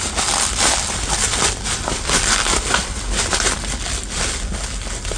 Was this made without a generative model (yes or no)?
yes